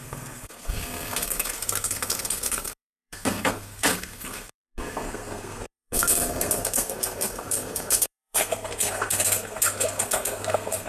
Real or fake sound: fake